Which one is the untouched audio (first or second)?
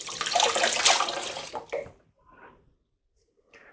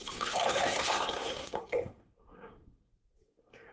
first